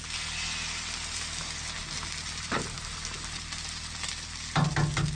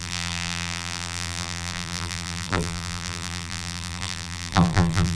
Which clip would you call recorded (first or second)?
first